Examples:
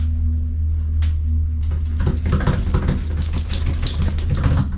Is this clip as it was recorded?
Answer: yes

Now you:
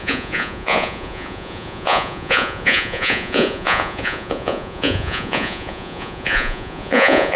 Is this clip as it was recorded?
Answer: no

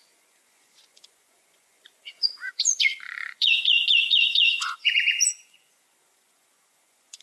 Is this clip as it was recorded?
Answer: no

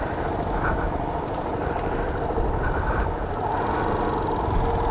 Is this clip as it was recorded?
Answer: yes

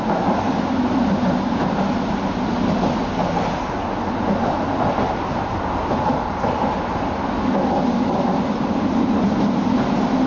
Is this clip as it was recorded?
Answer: yes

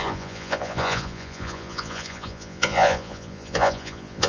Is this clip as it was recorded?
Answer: no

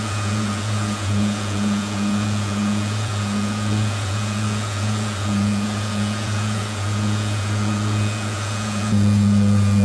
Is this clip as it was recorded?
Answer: no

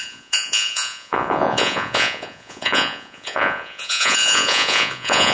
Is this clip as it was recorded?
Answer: no